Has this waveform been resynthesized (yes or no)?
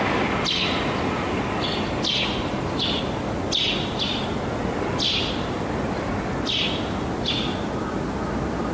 no